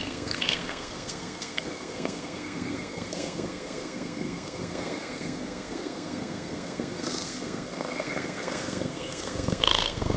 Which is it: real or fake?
fake